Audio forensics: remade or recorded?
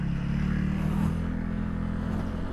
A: recorded